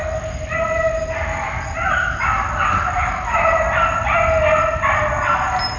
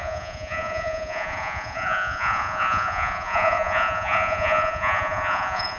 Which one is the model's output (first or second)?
second